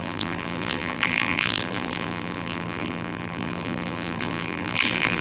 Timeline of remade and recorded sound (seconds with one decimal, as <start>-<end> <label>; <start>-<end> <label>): 0.0-5.2 remade